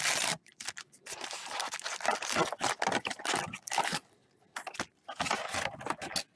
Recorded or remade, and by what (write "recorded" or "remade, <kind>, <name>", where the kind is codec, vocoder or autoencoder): recorded